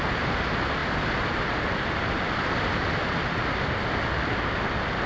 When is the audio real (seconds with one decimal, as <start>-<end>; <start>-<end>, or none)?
0.0-5.1